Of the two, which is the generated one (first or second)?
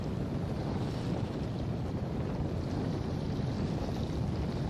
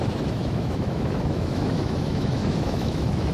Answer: second